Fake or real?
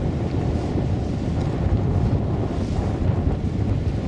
real